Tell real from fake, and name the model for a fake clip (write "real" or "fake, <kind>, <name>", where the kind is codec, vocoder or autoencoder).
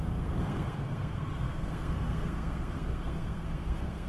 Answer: fake, codec, SNAC